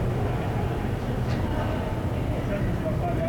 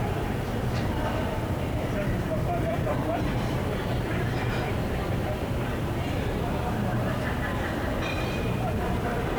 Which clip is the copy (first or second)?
second